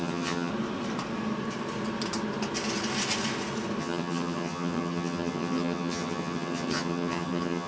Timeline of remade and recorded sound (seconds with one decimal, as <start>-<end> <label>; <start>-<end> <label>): 0.0-0.5 remade; 0.5-3.8 recorded; 3.8-7.7 remade